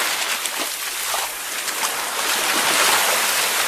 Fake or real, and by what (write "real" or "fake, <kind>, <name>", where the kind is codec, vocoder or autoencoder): real